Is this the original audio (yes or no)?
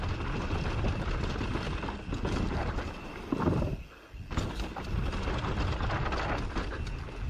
yes